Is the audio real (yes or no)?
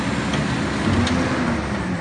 yes